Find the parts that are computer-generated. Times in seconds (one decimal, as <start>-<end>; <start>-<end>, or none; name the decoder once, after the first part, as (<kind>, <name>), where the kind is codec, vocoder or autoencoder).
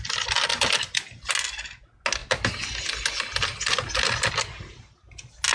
none